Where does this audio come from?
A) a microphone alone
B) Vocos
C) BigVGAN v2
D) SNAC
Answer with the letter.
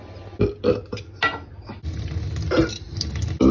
A